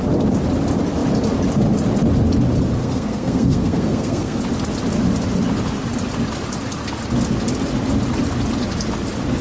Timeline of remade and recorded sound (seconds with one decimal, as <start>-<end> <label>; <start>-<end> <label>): 0.0-2.8 recorded; 2.8-4.4 remade; 4.4-9.4 recorded